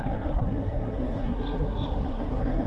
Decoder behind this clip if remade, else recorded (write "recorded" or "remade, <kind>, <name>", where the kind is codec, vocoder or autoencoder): remade, codec, SNAC